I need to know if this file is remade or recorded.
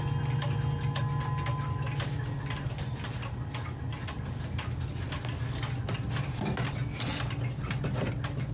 recorded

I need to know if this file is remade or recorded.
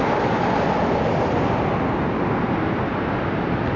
recorded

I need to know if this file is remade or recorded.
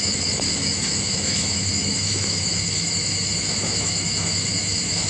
remade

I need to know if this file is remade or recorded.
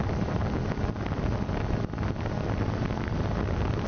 recorded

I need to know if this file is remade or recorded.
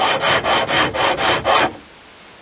recorded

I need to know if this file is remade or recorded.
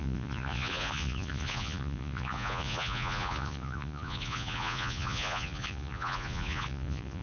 remade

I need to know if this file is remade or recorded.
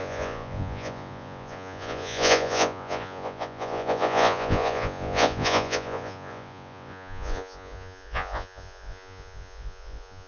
remade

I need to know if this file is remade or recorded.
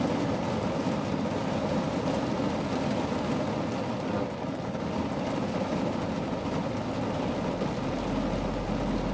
recorded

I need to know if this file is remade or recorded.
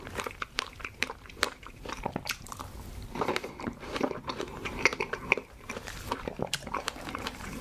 remade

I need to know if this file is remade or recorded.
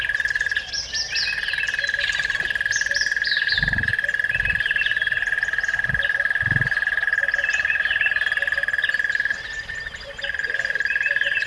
recorded